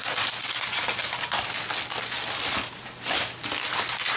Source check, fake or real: real